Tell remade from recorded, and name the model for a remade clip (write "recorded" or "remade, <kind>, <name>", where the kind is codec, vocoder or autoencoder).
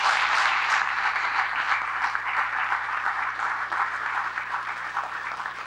remade, vocoder, BigVGAN v2